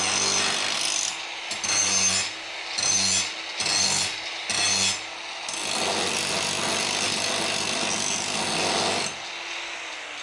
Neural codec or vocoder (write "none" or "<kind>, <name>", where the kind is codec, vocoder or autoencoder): none